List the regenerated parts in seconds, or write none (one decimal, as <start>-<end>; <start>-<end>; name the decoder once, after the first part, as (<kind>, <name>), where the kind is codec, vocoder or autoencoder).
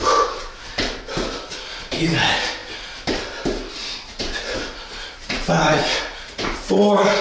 3.8-7.2 (vocoder, Vocos)